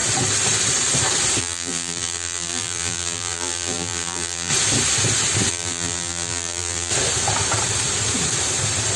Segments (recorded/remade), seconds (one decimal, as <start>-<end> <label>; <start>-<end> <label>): 0.0-1.4 recorded; 1.4-4.5 remade; 4.5-5.5 recorded; 5.5-6.9 remade; 6.9-9.0 recorded